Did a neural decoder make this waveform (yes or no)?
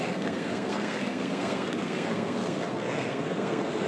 yes